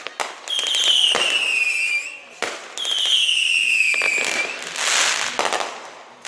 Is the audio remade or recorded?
recorded